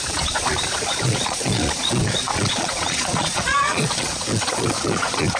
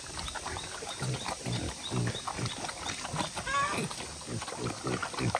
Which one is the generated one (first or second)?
first